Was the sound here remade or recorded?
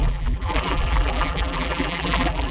remade